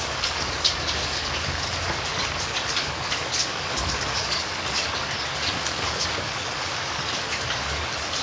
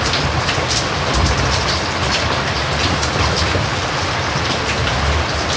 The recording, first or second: second